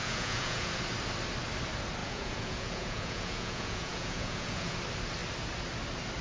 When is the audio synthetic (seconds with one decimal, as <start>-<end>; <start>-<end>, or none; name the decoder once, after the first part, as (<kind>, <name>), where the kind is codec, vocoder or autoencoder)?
0.0-0.8 (vocoder, Vocos); 2.0-4.8